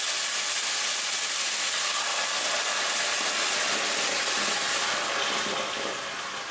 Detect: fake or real real